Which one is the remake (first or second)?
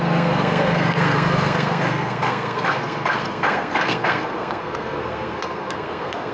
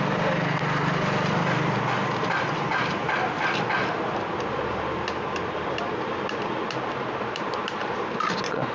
first